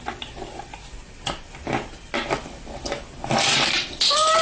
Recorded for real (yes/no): yes